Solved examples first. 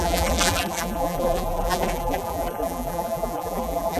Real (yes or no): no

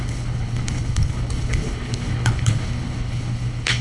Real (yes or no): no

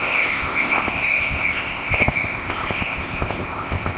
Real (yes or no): no